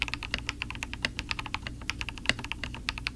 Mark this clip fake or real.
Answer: real